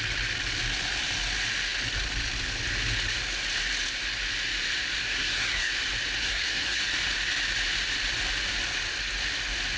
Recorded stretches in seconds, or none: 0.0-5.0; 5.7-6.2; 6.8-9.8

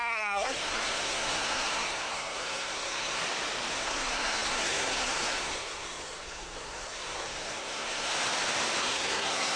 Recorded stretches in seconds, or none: 3.2-3.7; 8.1-8.8